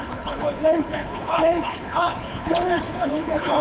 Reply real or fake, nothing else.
fake